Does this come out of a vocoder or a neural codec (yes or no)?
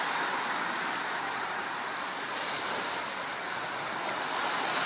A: no